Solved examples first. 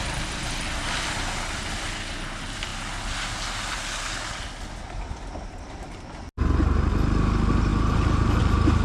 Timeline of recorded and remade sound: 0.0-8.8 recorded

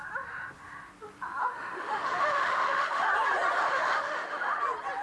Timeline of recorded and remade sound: 0.0-1.4 recorded; 1.4-3.1 remade; 3.1-3.6 recorded; 3.6-4.6 remade; 4.6-5.0 recorded

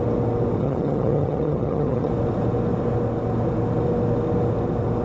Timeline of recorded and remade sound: 0.0-0.6 recorded; 0.6-2.1 remade; 2.1-5.0 recorded

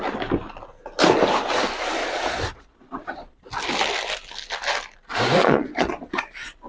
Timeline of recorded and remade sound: 0.0-2.0 recorded; 2.0-3.5 remade; 3.5-5.4 recorded; 5.4-6.2 remade; 6.2-6.7 recorded

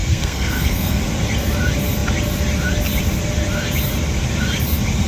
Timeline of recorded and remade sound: 0.0-1.0 remade; 1.0-5.1 recorded